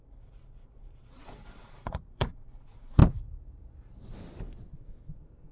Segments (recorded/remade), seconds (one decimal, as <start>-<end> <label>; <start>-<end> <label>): 0.0-3.0 remade; 3.0-5.5 recorded